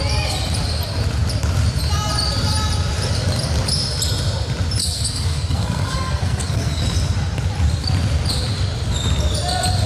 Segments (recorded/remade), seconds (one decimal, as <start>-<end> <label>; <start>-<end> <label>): 0.0-4.8 recorded; 4.8-6.8 remade; 6.8-9.9 recorded

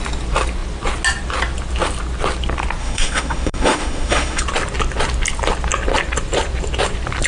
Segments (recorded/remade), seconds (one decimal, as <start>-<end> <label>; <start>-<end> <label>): 0.0-2.8 recorded; 2.8-4.4 remade; 4.4-7.3 recorded